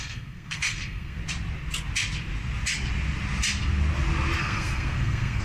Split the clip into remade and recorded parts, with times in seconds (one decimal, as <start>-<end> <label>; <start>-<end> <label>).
0.0-1.2 remade; 1.2-4.4 recorded; 4.4-5.4 remade